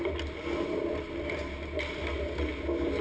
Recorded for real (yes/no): yes